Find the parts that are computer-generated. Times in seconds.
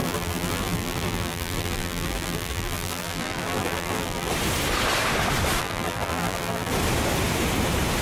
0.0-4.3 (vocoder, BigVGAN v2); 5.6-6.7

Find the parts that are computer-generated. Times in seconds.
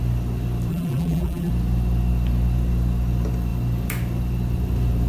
0.7-1.5 (vocoder, BigVGAN v2)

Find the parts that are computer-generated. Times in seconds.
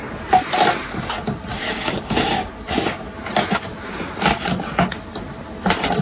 1.5-2.5 (codec, DAC)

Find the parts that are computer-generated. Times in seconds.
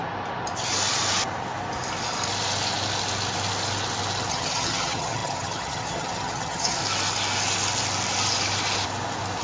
4.3-6.8 (vocoder, HiFi-GAN)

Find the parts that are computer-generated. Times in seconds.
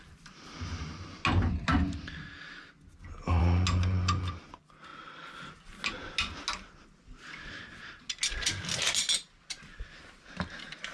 none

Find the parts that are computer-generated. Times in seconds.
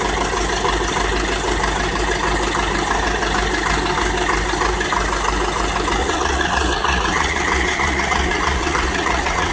6.0-9.5 (vocoder, Vocos)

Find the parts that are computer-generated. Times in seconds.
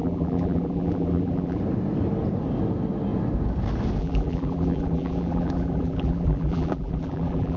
0.0-1.6 (vocoder, BigVGAN v2); 4.0-7.6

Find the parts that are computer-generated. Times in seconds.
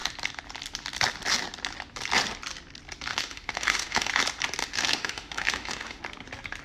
3.1-4.1 (autoencoder, DAC-VAE); 4.6-6.0